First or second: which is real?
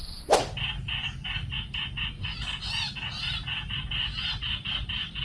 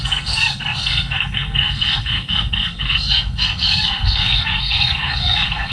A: first